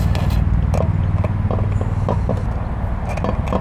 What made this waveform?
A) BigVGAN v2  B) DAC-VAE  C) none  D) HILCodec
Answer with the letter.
C